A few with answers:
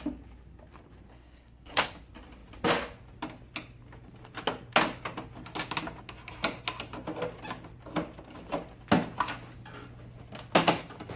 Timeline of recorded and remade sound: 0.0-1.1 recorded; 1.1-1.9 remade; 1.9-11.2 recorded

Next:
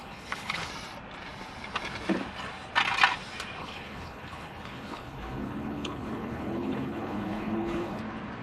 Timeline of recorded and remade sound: 0.0-0.7 remade; 0.7-3.6 recorded; 3.6-8.0 remade; 8.0-8.4 recorded

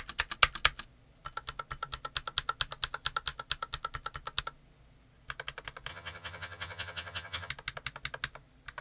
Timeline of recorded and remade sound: 0.0-5.9 recorded; 5.9-7.5 remade; 7.5-8.8 recorded

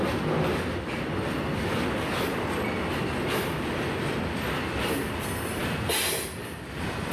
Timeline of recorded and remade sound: 0.0-7.1 recorded

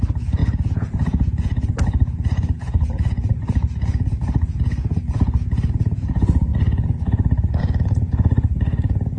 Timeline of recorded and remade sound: 0.0-4.8 remade; 4.8-5.7 recorded; 5.7-6.5 remade; 6.5-7.6 recorded; 7.6-9.2 remade

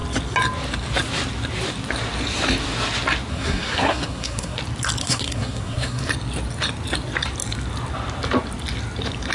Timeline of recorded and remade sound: 0.0-3.3 recorded; 3.3-4.6 remade; 4.6-5.0 recorded; 5.0-6.1 remade; 6.1-9.3 recorded